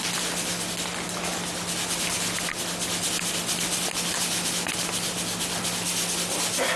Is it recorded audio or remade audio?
recorded